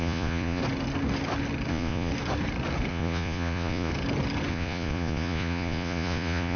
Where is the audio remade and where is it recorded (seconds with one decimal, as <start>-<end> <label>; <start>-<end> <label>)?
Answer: 0.0-0.6 remade; 0.6-1.7 recorded; 1.7-2.1 remade; 2.1-2.9 recorded; 2.9-3.9 remade; 3.9-4.5 recorded; 4.5-6.6 remade

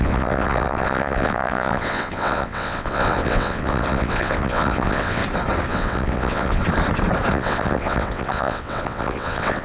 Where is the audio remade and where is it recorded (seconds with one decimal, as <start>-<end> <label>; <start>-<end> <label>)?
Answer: 0.0-5.2 remade; 5.2-5.7 recorded; 5.7-6.6 remade; 6.6-7.3 recorded; 7.3-9.6 remade

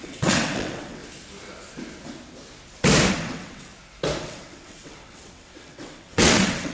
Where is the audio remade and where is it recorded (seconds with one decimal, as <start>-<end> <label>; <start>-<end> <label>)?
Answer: 0.0-1.0 remade; 1.0-3.1 recorded; 3.1-3.7 remade; 3.7-4.2 recorded; 4.2-6.7 remade

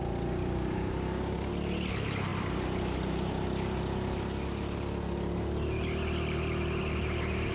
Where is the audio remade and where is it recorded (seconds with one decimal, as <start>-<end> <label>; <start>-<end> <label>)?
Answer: 0.0-0.4 recorded; 0.4-1.5 remade; 1.5-7.5 recorded

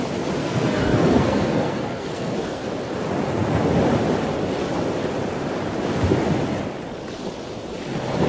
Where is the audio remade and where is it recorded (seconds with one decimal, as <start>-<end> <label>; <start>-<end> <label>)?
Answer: 0.0-0.4 recorded; 0.4-2.6 remade; 2.6-8.3 recorded

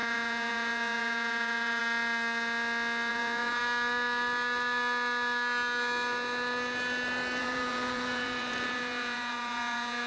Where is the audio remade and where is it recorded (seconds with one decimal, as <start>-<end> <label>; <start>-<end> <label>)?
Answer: 0.0-1.8 remade; 1.8-3.1 recorded; 3.1-3.6 remade; 3.6-7.4 recorded; 7.4-10.1 remade